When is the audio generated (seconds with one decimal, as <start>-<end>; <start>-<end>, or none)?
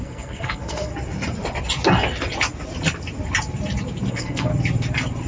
0.0-0.9; 4.1-4.5